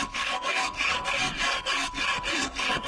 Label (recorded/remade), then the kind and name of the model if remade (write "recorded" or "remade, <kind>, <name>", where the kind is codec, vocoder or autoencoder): remade, codec, SNAC